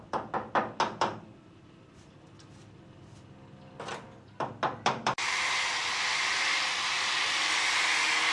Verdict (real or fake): real